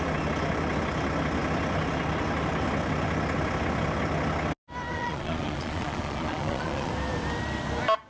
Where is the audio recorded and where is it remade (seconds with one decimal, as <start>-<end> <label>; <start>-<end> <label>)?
0.0-4.9 recorded; 4.9-6.9 remade; 6.9-8.1 recorded